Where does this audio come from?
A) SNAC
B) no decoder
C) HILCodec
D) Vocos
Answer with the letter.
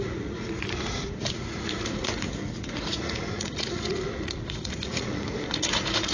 D